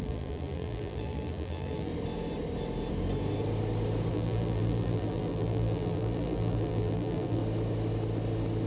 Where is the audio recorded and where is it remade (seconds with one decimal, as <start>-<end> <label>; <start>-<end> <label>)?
0.0-1.9 remade; 1.9-4.1 recorded; 4.1-7.4 remade; 7.4-8.7 recorded